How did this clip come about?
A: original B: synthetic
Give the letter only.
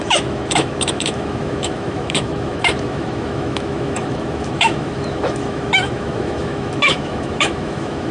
B